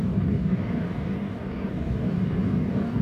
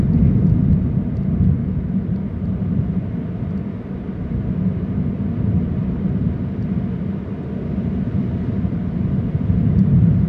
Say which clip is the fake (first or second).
first